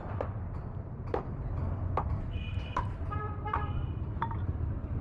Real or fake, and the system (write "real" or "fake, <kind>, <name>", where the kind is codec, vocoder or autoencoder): fake, vocoder, BigVGAN v2